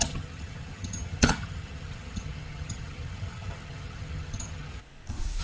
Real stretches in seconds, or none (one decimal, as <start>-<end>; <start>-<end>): 4.8-5.4